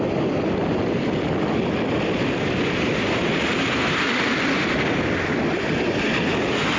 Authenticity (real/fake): real